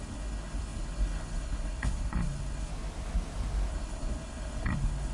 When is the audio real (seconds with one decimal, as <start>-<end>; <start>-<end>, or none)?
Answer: 2.7-3.7